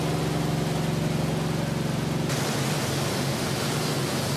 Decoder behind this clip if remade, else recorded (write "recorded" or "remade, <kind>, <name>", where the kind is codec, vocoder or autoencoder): recorded